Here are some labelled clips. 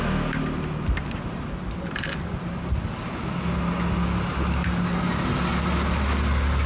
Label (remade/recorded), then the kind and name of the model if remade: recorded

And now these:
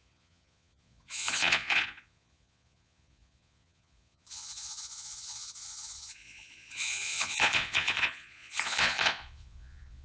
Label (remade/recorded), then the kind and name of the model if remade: remade, vocoder, Vocos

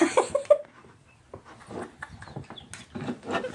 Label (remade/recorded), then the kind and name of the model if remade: recorded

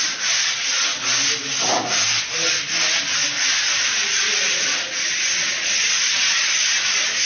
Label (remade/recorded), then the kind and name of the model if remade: recorded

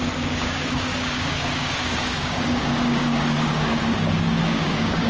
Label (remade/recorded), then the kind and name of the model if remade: remade, codec, DAC